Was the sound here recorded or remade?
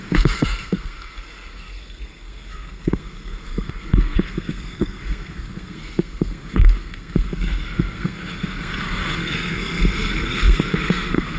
remade